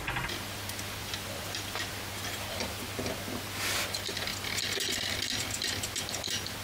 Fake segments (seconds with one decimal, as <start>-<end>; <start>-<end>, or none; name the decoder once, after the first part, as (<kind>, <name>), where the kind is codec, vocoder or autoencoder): 1.0-2.0 (vocoder, BigVGAN v2)